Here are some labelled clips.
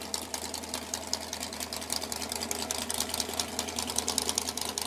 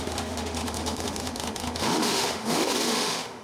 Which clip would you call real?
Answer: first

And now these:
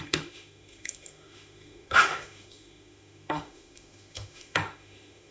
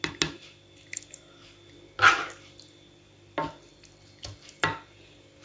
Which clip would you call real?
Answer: second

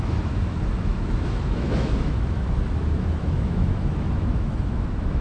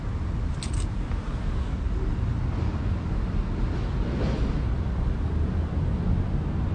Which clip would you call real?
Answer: second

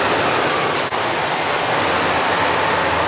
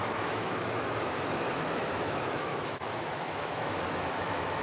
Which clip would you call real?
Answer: first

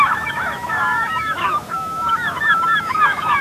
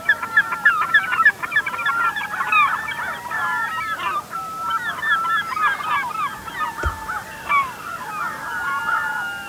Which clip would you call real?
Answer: second